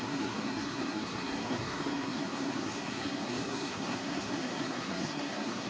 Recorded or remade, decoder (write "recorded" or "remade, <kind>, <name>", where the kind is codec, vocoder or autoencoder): remade, codec, SNAC